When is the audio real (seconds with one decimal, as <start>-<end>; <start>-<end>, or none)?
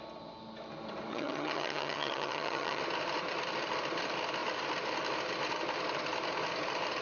0.0-1.1; 2.8-7.0